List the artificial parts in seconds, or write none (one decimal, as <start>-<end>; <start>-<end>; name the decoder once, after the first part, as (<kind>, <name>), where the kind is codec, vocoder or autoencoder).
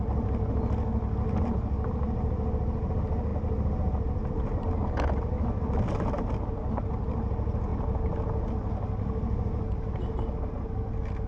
none